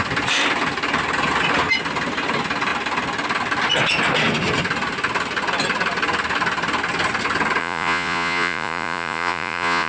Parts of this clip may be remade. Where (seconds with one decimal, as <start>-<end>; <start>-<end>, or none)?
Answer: 7.6-9.9